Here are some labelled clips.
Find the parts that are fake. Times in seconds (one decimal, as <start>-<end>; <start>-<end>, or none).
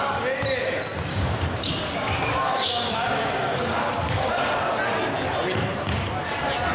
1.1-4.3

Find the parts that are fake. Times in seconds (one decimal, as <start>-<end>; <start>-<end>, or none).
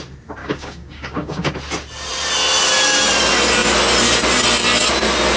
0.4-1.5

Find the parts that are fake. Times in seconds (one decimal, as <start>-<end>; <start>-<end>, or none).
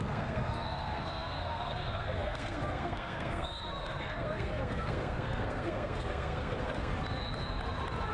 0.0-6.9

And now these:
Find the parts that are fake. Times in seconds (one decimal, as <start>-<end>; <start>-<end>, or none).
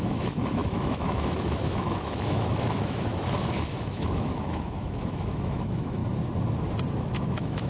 0.0-6.0; 7.0-7.7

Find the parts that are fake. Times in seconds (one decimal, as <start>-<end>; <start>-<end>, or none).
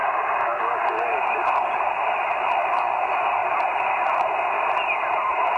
3.4-5.6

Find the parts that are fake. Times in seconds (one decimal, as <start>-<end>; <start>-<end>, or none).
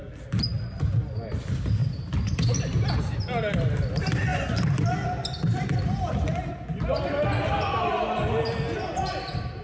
none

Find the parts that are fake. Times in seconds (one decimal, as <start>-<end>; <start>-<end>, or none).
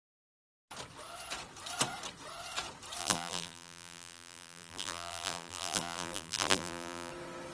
3.0-7.1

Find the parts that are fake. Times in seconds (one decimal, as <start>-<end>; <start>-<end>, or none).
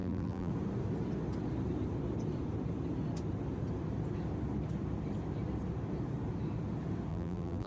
0.0-0.5; 7.1-7.7